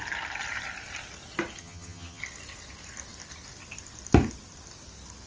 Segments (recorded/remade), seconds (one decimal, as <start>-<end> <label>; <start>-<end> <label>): 0.0-1.6 recorded; 1.6-2.2 remade; 2.2-5.3 recorded